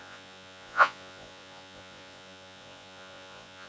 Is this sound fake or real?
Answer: fake